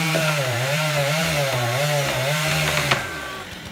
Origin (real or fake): fake